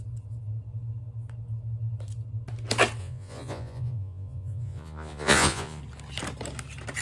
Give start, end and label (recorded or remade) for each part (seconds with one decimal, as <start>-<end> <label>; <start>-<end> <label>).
0.0-3.0 recorded; 3.0-5.8 remade; 5.8-7.0 recorded